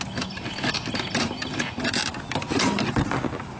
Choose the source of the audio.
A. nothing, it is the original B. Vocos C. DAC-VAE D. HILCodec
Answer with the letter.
A